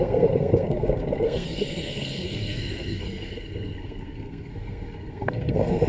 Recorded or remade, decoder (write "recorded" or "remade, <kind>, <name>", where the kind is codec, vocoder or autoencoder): remade, codec, SNAC